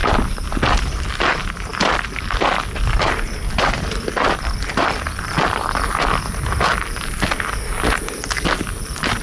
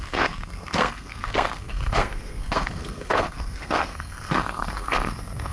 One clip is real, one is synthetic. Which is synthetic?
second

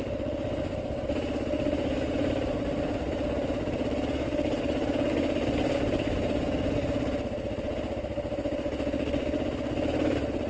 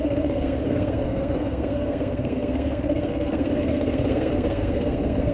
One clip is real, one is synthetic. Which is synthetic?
second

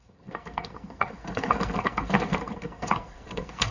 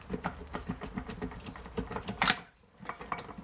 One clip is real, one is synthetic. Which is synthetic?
first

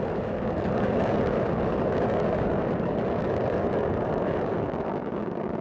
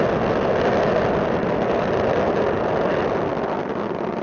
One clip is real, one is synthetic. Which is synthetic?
first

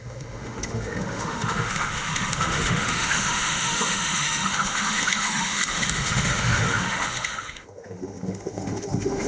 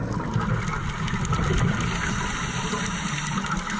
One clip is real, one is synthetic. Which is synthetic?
first